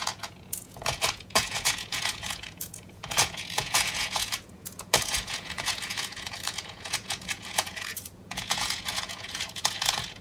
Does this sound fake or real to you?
fake